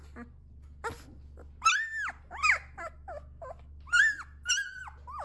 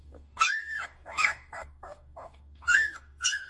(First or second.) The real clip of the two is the first